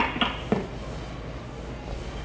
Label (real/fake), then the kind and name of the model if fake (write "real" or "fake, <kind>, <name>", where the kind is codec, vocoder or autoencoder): real